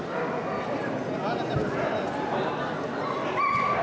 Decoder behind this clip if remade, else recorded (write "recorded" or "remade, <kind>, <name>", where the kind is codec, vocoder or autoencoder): recorded